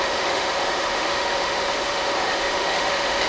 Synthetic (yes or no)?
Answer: yes